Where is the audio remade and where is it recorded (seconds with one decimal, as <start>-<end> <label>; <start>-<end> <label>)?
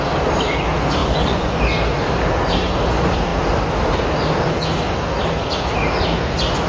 0.0-1.0 recorded; 1.0-1.6 remade; 1.6-6.7 recorded